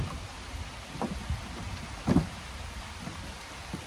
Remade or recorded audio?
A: recorded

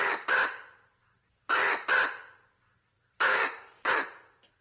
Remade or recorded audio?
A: recorded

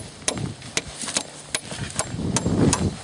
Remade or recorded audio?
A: recorded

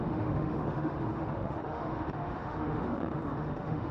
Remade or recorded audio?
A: remade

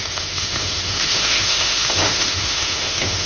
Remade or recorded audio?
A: remade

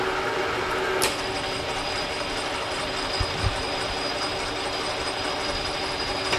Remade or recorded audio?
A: recorded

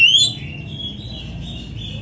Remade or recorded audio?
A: recorded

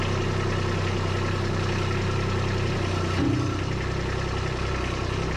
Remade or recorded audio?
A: recorded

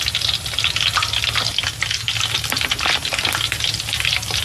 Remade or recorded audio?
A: recorded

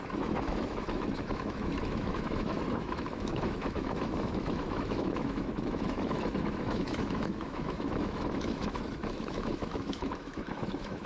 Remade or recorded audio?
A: remade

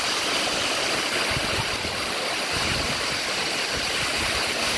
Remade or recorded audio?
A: recorded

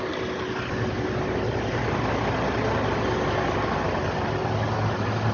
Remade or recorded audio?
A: recorded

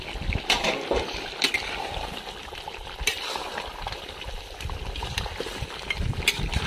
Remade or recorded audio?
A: recorded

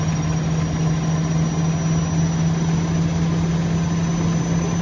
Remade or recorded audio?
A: recorded